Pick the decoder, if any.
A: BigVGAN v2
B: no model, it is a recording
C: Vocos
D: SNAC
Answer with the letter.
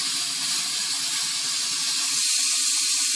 B